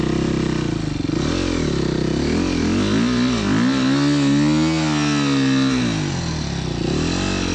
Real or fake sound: real